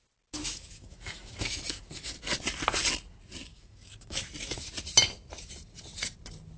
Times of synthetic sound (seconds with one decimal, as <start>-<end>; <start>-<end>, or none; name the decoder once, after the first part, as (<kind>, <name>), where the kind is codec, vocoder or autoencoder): 0.4-2.1 (autoencoder, DAC-VAE); 3.5-4.2